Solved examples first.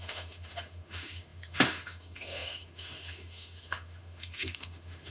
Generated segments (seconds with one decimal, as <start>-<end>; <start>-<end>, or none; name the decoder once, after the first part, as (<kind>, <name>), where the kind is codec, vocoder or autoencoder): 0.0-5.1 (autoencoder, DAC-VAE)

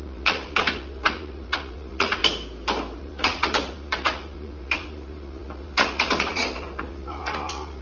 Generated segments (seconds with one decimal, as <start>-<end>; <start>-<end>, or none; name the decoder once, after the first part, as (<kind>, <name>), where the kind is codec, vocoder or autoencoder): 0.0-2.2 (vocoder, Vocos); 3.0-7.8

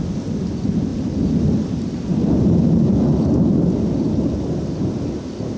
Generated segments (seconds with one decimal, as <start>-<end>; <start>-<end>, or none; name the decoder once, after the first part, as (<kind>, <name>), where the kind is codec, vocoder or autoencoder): none

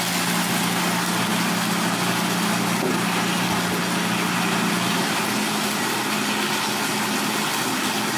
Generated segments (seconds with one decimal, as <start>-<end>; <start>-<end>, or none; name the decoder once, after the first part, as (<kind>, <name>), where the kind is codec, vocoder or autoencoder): none